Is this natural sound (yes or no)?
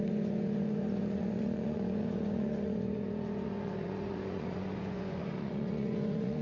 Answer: no